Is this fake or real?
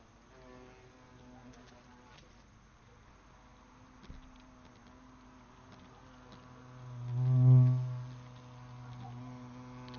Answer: real